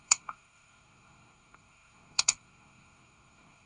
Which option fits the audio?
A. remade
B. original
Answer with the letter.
A